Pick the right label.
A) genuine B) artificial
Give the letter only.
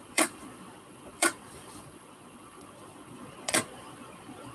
B